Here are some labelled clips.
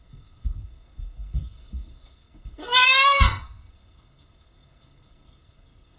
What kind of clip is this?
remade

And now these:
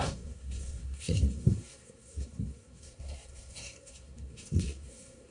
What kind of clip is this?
remade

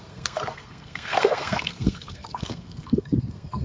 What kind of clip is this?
remade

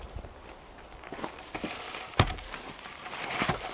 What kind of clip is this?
recorded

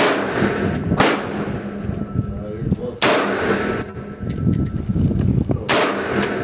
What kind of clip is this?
recorded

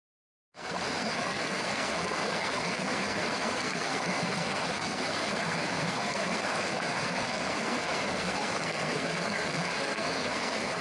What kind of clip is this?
remade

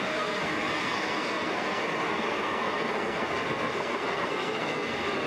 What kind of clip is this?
remade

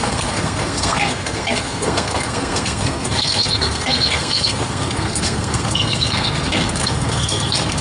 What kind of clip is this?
remade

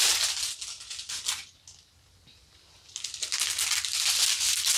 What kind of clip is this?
recorded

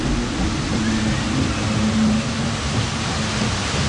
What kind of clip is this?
recorded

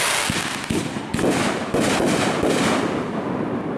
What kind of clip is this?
recorded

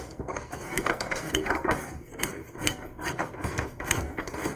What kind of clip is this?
remade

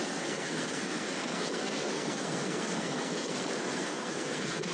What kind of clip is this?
remade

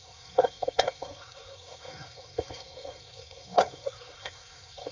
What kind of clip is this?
remade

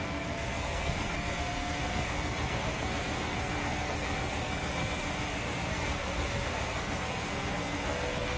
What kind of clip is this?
remade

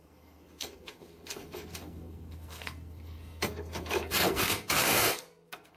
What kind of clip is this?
remade